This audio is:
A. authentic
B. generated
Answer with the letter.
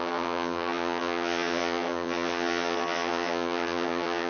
B